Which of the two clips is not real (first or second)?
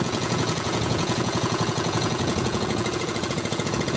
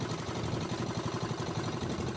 first